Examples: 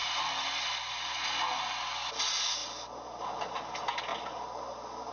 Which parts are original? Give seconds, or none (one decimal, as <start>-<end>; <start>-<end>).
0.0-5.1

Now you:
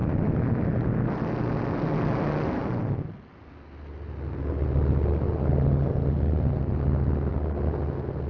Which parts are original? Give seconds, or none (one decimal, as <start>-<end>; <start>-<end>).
0.0-8.3

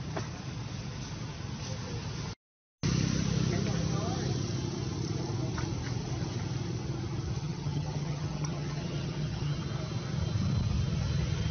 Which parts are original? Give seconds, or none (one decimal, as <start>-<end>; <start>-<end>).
0.0-7.4; 9.6-11.5

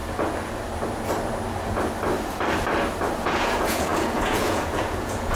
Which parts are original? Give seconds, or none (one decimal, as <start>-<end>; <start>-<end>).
0.0-3.2

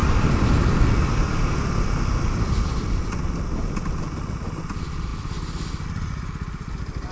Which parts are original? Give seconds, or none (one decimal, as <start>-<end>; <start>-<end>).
0.0-7.1

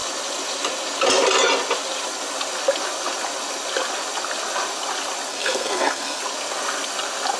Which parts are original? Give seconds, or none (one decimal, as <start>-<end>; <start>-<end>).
0.0-5.3; 6.2-7.4